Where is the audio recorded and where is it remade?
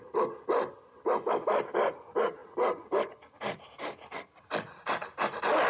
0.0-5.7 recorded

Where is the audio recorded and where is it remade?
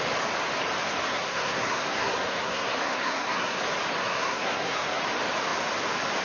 0.0-1.1 recorded; 1.1-3.6 remade; 3.6-4.0 recorded; 4.0-5.0 remade; 5.0-6.2 recorded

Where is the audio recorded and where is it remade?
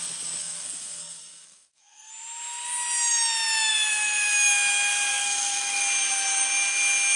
0.0-0.4 recorded; 0.4-2.1 remade; 2.1-5.1 recorded; 5.1-5.8 remade; 5.8-7.2 recorded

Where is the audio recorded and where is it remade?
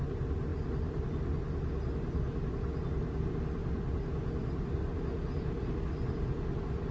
0.0-6.9 recorded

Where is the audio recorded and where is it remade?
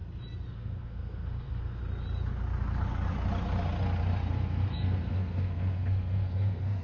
0.0-0.5 recorded; 0.5-1.8 remade; 1.8-4.3 recorded; 4.3-6.8 remade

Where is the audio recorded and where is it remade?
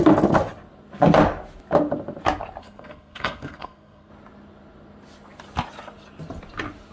0.0-2.6 recorded; 2.6-4.1 remade; 4.1-6.9 recorded